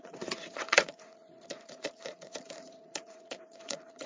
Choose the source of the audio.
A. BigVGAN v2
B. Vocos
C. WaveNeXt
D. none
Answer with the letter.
B